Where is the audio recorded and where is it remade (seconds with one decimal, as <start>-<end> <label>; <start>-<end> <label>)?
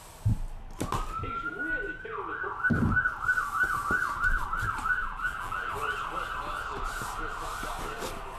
0.0-5.0 recorded; 5.0-5.7 remade; 5.7-8.4 recorded